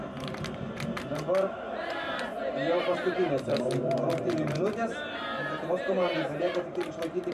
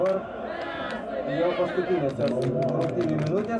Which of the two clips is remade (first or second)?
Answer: first